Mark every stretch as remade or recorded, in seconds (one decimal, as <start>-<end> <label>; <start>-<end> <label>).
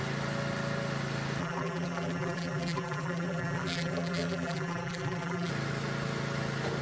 0.0-1.4 recorded; 1.4-5.5 remade; 5.5-6.8 recorded